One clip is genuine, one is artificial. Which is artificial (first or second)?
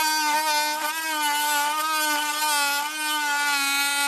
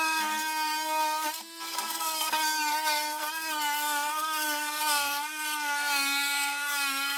second